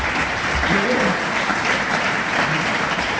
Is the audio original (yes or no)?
no